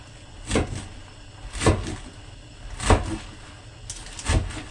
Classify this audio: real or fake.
real